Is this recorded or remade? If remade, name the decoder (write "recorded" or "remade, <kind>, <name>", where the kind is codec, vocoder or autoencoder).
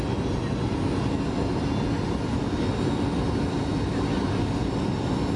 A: recorded